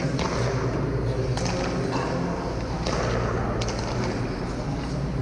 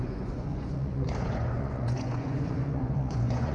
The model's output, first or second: second